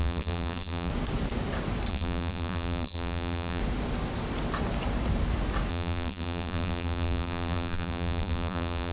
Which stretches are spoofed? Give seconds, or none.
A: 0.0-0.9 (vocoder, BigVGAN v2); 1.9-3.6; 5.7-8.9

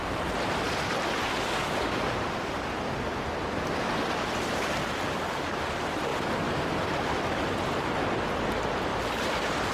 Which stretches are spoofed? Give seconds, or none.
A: 0.0-4.9 (vocoder, BigVGAN v2)